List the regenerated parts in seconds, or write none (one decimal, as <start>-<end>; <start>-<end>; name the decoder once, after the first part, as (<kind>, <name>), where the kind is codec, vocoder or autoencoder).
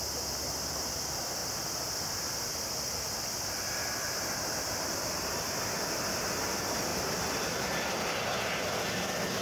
none